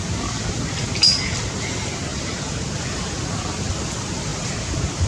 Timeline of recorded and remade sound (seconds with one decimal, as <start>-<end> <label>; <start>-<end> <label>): 0.0-2.1 recorded; 2.1-3.2 remade; 3.2-5.1 recorded